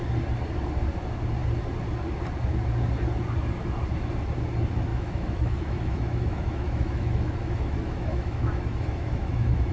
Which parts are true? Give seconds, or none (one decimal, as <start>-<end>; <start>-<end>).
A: 0.0-4.9